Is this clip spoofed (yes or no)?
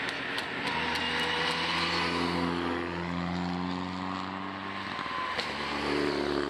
no